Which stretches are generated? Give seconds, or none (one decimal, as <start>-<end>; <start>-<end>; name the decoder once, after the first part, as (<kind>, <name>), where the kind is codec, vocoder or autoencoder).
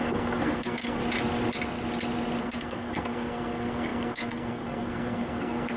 0.0-1.0 (codec, SNAC); 2.4-5.8